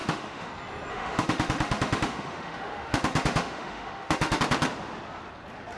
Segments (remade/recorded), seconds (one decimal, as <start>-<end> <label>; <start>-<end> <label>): 0.0-0.5 remade; 0.5-0.9 recorded; 0.9-4.4 remade; 4.4-5.8 recorded